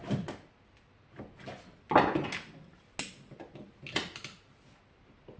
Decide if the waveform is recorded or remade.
recorded